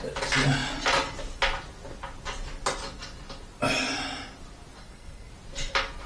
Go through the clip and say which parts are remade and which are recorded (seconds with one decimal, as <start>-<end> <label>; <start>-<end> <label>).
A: 0.0-4.8 recorded; 4.8-5.3 remade; 5.3-6.1 recorded